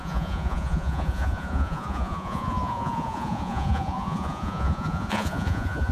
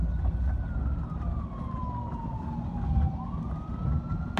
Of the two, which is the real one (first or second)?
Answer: second